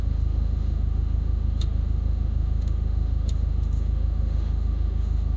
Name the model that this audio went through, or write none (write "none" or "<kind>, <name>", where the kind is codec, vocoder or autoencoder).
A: autoencoder, DAC-VAE